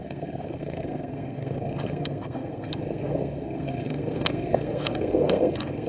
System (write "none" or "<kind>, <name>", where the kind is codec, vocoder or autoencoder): codec, SNAC